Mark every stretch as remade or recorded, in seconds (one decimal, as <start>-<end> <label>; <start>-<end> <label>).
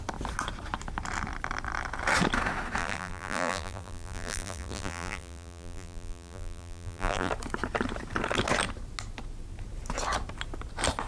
0.0-2.8 recorded; 2.8-7.3 remade; 7.3-11.1 recorded